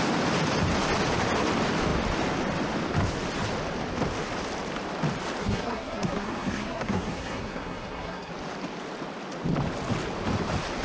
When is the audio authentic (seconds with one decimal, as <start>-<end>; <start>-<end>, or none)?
0.0-5.4; 8.3-10.8